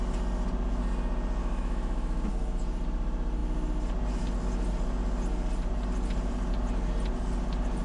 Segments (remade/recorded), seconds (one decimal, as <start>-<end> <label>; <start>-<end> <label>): 0.0-1.4 recorded; 1.4-2.3 remade; 2.3-7.8 recorded